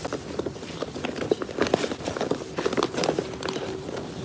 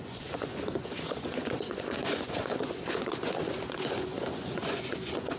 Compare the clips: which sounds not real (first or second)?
second